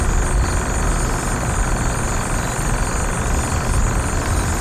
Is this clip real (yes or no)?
yes